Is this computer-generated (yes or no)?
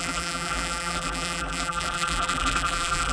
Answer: yes